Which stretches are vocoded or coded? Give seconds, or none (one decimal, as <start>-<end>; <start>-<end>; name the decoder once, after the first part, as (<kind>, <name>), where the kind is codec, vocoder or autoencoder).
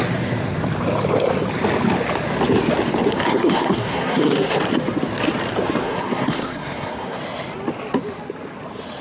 3.1-4.6 (codec, SNAC); 5.8-7.2